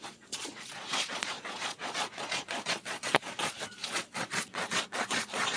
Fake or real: fake